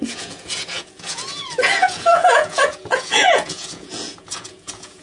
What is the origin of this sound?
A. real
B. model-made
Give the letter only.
B